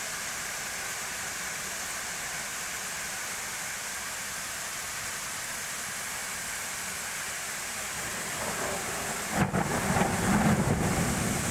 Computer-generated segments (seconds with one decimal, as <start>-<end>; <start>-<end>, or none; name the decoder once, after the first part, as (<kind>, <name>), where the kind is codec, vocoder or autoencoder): 6.2-7.1 (vocoder, BigVGAN v2); 8.1-9.6